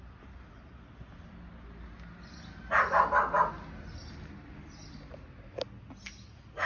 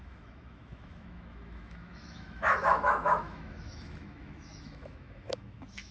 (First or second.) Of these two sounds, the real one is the first